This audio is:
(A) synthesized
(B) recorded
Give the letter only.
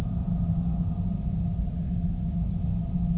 B